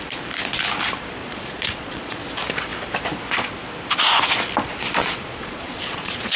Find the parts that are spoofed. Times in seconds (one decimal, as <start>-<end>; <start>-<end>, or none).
1.2-2.2; 5.0-6.4